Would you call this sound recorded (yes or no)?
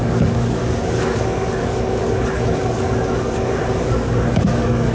no